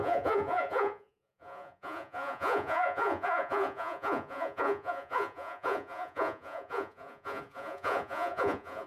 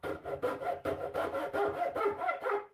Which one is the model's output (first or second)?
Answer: first